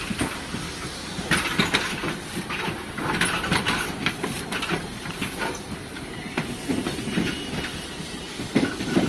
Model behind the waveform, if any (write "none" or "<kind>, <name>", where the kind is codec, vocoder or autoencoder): vocoder, BigVGAN v2